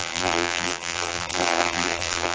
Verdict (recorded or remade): remade